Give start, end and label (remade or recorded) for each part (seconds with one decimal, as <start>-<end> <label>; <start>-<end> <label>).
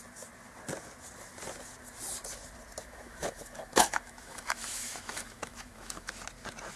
0.0-2.8 recorded; 2.8-6.1 remade; 6.1-6.8 recorded